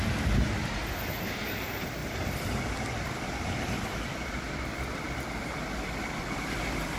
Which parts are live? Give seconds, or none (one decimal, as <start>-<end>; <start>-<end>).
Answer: 0.0-7.0